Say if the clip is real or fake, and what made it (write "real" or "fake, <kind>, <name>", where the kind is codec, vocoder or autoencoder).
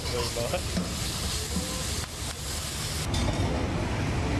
real